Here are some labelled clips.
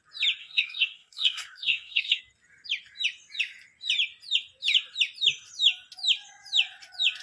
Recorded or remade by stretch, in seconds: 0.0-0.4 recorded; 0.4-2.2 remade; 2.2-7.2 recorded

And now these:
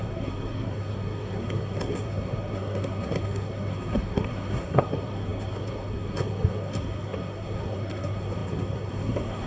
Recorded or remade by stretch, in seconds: 0.0-9.5 remade

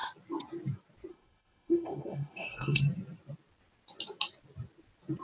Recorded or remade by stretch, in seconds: 0.0-1.1 recorded; 1.1-2.8 remade; 2.8-5.2 recorded

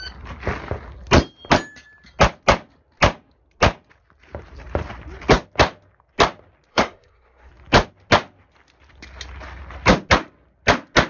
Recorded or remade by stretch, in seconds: 0.0-6.7 recorded; 6.7-7.5 remade; 7.5-11.1 recorded

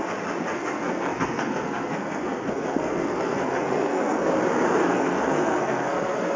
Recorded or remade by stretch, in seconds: 0.0-0.5 recorded; 0.5-4.3 remade; 4.3-4.8 recorded; 4.8-6.4 remade

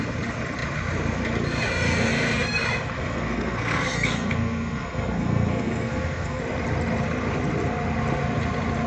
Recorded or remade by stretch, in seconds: 0.0-3.0 recorded; 3.0-6.4 remade; 6.4-8.9 recorded